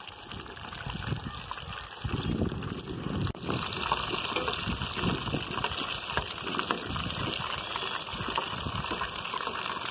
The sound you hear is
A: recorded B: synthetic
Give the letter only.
A